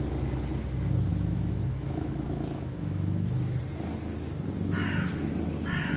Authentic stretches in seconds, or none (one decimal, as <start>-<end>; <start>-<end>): 0.0-1.1; 3.6-6.0